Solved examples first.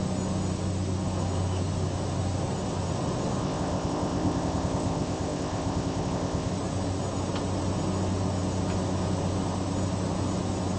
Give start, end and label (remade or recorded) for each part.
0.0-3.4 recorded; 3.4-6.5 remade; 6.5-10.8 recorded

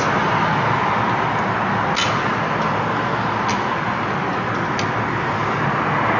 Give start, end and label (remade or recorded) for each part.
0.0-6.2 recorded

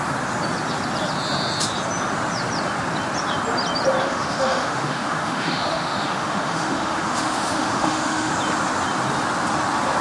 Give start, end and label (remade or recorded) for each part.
0.0-4.0 recorded; 4.0-8.3 remade; 8.3-10.0 recorded